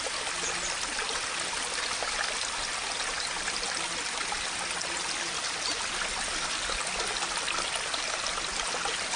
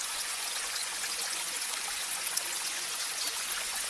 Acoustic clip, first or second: first